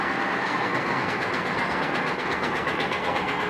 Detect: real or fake fake